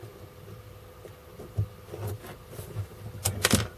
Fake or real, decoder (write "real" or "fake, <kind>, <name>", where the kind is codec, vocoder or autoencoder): real